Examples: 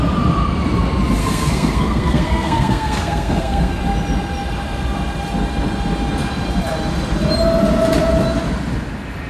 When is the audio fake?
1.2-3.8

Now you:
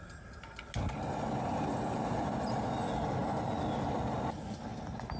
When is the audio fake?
none

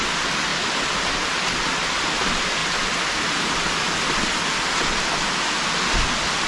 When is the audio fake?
none

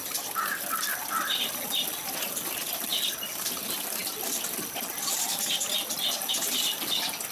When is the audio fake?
none

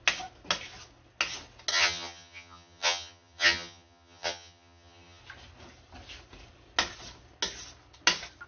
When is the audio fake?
1.7-5.2